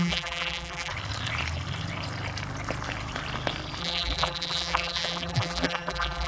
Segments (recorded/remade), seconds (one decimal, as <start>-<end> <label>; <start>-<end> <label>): 0.0-0.9 remade; 0.9-3.8 recorded; 3.8-6.3 remade